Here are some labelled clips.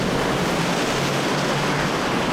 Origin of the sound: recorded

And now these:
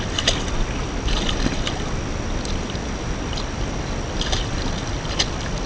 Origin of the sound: recorded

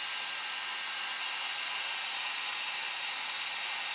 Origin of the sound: recorded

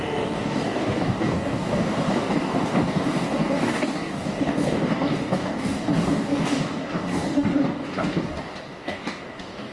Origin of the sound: remade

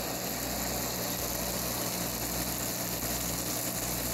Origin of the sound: recorded